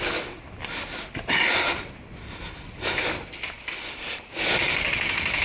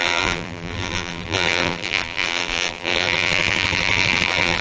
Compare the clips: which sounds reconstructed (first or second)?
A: second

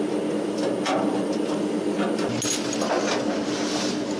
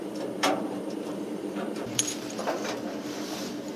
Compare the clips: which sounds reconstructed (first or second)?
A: second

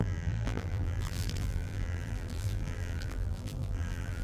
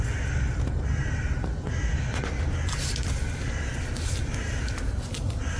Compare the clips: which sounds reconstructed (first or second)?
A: first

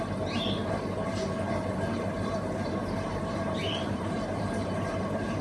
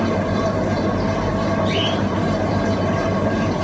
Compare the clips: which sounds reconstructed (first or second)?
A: first